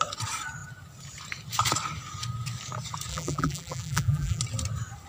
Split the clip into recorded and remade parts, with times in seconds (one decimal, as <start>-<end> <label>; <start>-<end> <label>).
0.0-3.1 recorded; 3.1-4.4 remade; 4.4-5.1 recorded